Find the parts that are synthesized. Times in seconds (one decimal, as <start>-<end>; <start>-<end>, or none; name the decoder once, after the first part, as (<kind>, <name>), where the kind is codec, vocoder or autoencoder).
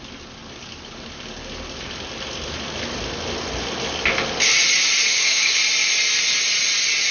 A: 5.1-5.6 (codec, DAC)